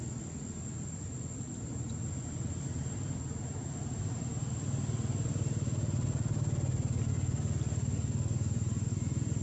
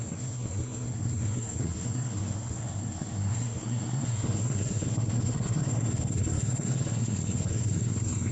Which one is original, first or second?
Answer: first